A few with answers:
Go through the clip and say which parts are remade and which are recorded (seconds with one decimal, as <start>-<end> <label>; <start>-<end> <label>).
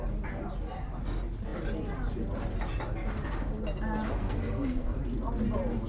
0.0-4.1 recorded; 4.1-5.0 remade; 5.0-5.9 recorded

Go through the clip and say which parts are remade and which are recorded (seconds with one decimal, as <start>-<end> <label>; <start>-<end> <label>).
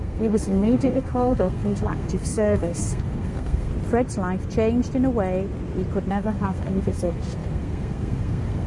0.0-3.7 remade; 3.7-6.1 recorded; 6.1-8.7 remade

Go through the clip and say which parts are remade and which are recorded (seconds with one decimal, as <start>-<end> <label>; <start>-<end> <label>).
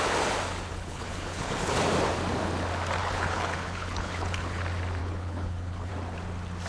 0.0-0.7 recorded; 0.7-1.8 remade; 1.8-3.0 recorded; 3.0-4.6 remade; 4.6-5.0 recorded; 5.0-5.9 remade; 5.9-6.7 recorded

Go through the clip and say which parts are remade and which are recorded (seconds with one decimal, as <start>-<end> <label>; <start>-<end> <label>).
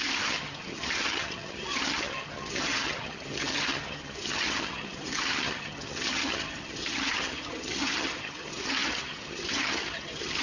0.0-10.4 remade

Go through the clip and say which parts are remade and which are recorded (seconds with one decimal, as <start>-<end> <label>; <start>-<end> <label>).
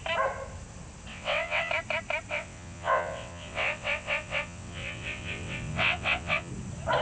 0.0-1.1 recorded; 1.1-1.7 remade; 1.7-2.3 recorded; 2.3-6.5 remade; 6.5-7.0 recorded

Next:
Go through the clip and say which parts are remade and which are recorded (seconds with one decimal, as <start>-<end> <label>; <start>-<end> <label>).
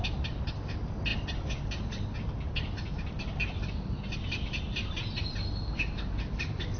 0.0-6.8 recorded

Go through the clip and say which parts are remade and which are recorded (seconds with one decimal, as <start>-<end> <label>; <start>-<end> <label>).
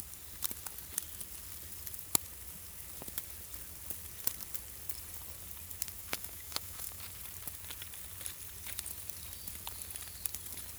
0.0-6.0 recorded; 6.0-7.0 remade; 7.0-10.8 recorded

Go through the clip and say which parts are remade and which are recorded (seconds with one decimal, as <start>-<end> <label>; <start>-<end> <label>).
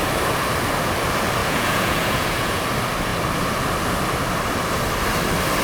0.0-1.4 recorded; 1.4-2.6 remade; 2.6-5.6 recorded